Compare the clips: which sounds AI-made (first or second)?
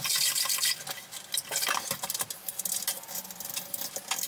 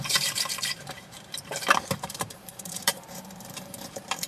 second